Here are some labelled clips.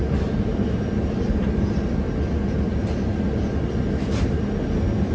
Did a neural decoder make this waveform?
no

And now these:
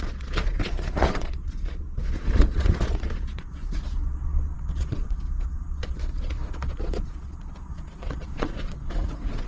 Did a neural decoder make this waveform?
yes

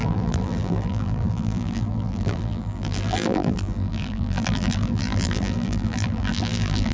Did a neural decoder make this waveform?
yes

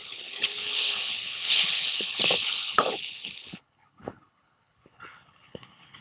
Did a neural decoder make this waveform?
yes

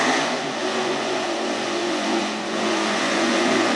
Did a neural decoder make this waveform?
yes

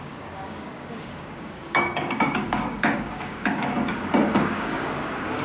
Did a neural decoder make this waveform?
yes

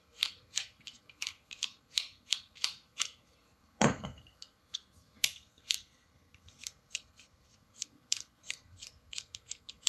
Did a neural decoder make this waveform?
yes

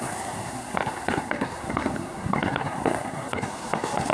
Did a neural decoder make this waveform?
yes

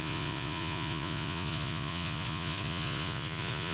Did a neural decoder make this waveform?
yes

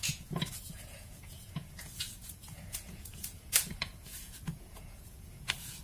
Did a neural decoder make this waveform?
yes